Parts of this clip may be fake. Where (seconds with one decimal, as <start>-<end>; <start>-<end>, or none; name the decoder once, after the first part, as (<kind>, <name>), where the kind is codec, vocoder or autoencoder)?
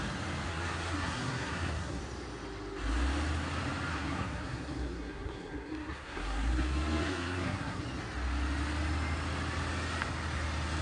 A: 0.5-2.0 (codec, SNAC); 3.9-7.8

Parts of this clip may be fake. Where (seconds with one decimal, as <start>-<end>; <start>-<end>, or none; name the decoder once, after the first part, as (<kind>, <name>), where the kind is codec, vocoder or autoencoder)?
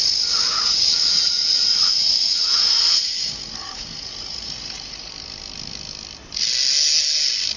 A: 0.5-5.1 (vocoder, Vocos)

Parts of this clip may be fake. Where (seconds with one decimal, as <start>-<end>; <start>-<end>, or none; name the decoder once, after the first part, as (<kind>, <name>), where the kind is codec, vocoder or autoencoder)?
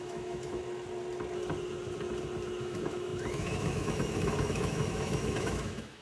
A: 0.0-0.6 (autoencoder, DAC-VAE); 2.6-6.0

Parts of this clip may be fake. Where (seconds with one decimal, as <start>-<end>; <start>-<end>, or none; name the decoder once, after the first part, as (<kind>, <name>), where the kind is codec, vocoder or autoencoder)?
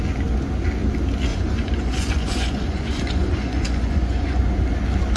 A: 1.3-4.4 (vocoder, Vocos)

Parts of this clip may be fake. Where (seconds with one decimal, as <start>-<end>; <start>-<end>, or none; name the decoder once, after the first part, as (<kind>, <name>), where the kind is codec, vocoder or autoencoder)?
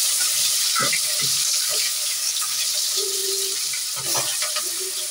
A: 1.4-2.6 (codec, DAC)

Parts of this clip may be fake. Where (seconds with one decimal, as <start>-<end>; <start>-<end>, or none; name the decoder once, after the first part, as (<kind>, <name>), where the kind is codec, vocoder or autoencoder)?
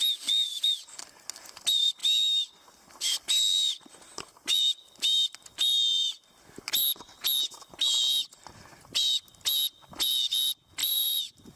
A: 10.8-11.6 (vocoder, BigVGAN v2)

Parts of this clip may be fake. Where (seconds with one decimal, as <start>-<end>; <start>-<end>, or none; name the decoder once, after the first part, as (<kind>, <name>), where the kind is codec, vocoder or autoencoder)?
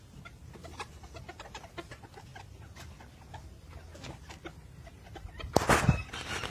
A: none